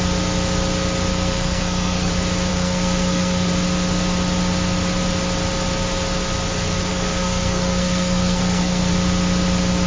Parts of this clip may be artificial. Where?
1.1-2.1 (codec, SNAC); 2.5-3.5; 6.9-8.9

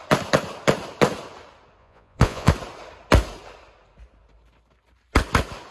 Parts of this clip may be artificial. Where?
1.8-2.5 (vocoder, Vocos)

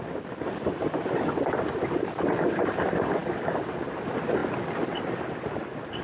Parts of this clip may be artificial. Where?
none